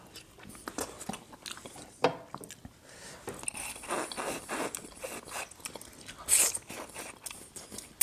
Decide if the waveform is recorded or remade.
recorded